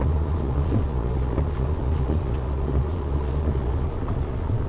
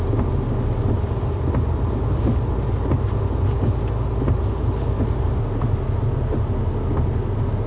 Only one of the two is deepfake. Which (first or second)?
first